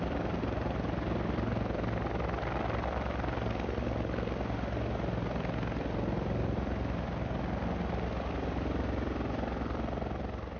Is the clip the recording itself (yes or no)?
yes